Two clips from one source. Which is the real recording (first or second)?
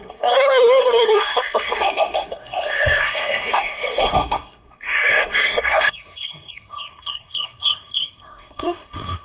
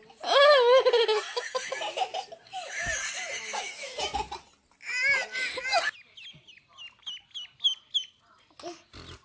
second